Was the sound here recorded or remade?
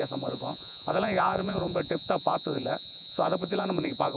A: remade